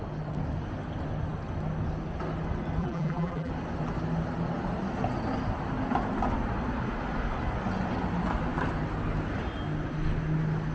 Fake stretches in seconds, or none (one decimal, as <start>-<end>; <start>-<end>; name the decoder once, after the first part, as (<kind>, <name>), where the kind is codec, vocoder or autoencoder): 2.8-3.5 (vocoder, BigVGAN v2)